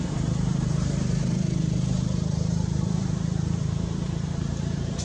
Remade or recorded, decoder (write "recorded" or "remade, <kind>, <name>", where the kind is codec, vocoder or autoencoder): remade, vocoder, BigVGAN v2